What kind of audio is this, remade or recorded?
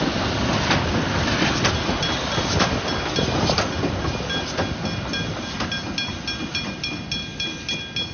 recorded